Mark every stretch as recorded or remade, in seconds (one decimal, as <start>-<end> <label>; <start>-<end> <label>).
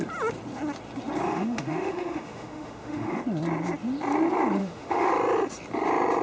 0.0-1.3 recorded; 1.3-3.2 remade; 3.2-4.6 recorded; 4.6-5.1 remade; 5.1-6.2 recorded